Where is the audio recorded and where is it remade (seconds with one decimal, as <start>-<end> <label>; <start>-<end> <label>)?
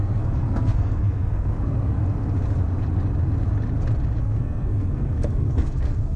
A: 0.0-2.0 remade; 2.0-4.2 recorded; 4.2-6.2 remade